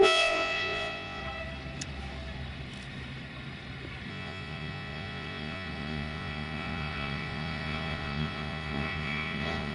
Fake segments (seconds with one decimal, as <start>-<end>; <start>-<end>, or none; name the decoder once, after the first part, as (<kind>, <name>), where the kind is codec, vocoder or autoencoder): 0.0-1.2 (vocoder, Vocos); 4.1-9.7